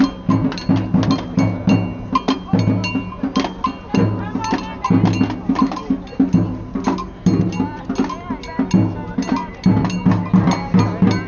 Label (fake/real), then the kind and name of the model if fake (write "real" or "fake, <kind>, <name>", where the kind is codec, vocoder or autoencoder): real